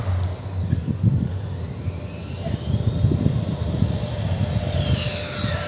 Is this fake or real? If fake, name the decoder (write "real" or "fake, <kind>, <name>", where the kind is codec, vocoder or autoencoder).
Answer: real